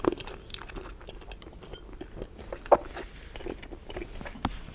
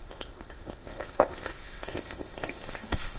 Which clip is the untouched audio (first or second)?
first